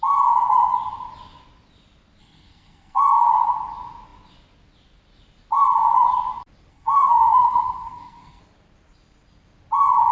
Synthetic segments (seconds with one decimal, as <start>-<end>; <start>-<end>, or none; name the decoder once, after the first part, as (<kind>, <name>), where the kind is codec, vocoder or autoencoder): 2.2-3.0 (codec, SNAC); 6.7-8.4